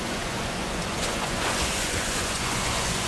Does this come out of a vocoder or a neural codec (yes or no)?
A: yes